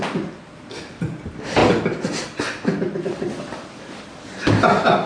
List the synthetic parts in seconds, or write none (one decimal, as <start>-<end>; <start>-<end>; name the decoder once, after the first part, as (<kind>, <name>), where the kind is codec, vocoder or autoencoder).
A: none